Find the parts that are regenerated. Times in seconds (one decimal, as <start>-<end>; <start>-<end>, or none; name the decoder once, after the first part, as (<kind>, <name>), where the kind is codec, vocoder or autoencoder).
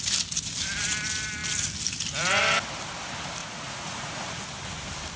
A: 3.4-4.4 (vocoder, Vocos)